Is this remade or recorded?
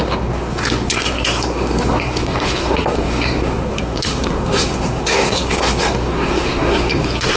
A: remade